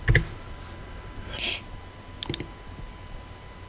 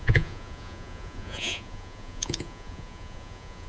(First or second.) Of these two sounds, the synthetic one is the second